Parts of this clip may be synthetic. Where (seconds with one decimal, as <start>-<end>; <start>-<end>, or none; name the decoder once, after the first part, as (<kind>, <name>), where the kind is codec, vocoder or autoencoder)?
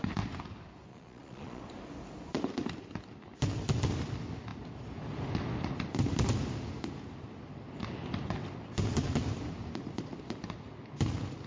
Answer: 0.9-1.6 (vocoder, Vocos)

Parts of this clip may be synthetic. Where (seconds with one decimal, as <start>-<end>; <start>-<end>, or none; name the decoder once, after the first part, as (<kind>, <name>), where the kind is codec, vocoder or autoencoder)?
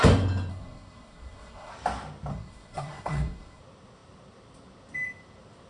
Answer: 0.5-1.7 (codec, SNAC); 2.3-3.6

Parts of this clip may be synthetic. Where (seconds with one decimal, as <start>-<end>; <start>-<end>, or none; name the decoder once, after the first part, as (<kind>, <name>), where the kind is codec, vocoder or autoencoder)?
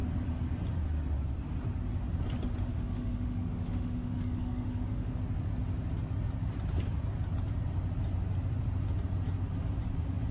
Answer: 2.7-5.1 (autoencoder, DAC-VAE)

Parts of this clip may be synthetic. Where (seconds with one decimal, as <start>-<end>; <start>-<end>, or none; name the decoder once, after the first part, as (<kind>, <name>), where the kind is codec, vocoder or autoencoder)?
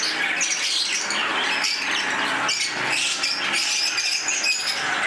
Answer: none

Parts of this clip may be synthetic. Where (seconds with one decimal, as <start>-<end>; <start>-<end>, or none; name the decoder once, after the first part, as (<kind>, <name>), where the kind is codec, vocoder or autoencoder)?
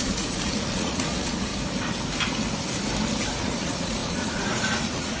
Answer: 0.0-1.5 (vocoder, Vocos); 3.3-5.2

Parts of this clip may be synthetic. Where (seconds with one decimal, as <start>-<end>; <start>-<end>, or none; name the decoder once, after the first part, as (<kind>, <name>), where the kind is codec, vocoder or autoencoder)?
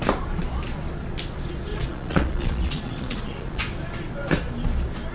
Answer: 1.7-3.6 (vocoder, Vocos)